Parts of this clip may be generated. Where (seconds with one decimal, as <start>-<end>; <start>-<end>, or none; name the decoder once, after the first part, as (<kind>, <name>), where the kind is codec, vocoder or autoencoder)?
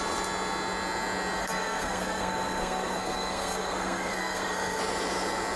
1.4-4.8 (codec, SNAC)